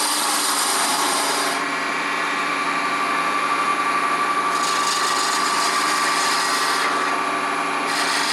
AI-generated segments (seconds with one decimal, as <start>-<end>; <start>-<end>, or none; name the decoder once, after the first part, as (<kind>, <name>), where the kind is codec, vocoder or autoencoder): 0.7-2.5 (vocoder, BigVGAN v2)